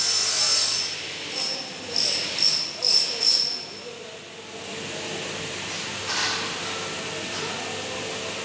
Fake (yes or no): no